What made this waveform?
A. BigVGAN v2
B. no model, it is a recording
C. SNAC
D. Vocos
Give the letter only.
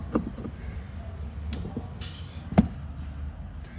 B